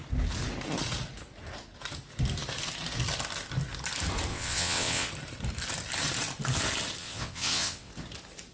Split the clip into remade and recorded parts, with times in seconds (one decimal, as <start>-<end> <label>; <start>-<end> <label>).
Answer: 0.0-4.3 recorded; 4.3-5.1 remade; 5.1-7.0 recorded; 7.0-7.9 remade; 7.9-8.5 recorded